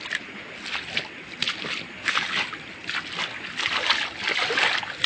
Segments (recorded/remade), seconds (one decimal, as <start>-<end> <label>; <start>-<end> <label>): 0.0-5.1 recorded